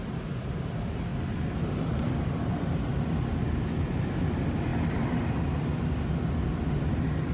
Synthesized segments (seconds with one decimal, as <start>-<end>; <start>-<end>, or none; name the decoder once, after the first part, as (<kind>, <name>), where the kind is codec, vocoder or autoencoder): none